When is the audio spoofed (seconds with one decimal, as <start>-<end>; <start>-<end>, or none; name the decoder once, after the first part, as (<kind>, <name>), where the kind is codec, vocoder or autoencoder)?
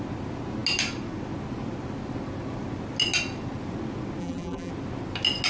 4.2-4.7 (vocoder, BigVGAN v2)